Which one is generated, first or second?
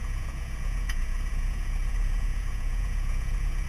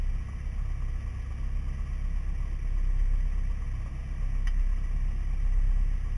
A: first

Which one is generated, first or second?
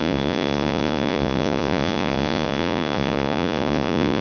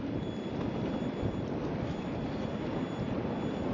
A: first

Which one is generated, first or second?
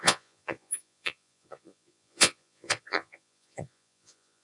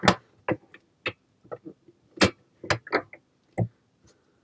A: first